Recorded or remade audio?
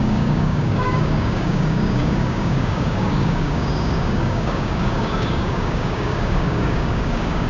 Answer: remade